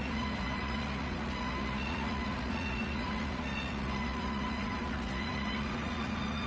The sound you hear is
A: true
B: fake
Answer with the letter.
B